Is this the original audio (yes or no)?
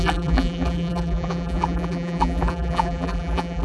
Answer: no